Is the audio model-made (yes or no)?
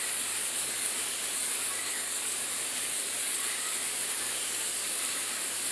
yes